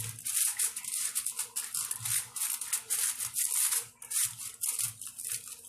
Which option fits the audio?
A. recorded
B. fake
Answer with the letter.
A